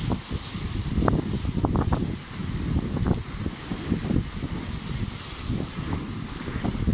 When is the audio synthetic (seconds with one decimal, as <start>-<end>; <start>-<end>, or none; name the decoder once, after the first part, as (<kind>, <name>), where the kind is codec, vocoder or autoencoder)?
none